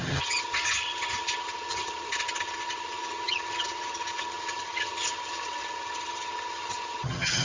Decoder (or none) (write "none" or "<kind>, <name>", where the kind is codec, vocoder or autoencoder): vocoder, HiFi-GAN